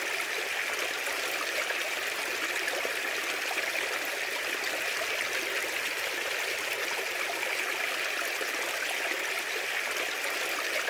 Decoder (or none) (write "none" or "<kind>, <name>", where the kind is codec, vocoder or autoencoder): none